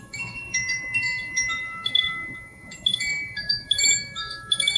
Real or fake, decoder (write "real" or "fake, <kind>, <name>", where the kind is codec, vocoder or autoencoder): fake, autoencoder, DAC-VAE